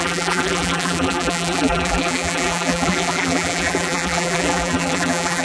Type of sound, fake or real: fake